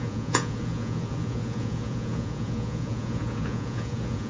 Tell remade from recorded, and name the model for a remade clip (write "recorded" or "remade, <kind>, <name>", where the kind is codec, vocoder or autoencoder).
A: remade, vocoder, Vocos